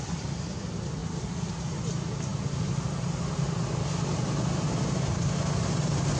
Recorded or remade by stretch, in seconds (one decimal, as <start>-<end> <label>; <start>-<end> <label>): 0.0-6.2 recorded